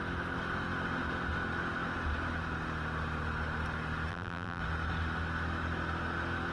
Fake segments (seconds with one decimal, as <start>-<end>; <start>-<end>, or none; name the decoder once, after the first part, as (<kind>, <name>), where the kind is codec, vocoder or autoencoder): 4.1-4.6 (vocoder, BigVGAN v2)